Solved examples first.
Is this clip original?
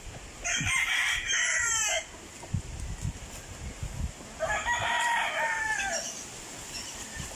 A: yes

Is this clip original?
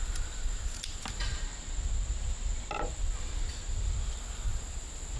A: yes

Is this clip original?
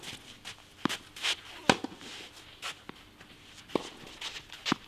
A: yes